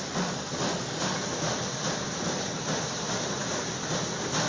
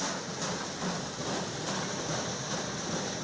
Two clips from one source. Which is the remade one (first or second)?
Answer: second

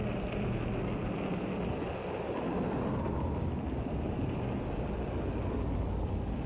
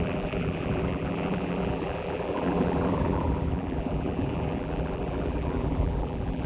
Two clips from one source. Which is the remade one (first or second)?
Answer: second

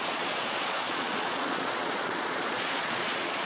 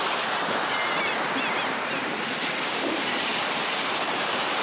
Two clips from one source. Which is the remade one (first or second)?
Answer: first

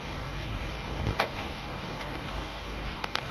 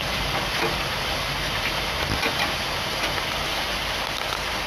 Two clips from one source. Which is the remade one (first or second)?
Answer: first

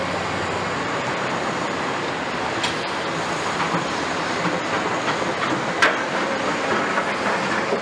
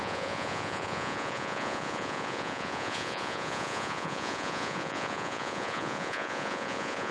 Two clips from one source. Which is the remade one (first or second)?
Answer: second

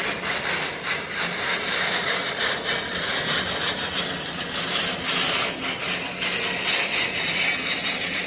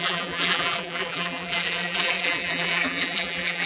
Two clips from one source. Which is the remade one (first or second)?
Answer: second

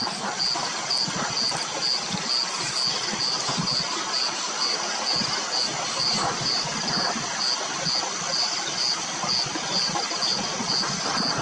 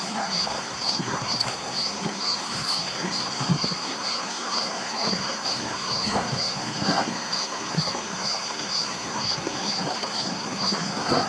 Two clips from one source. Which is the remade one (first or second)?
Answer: second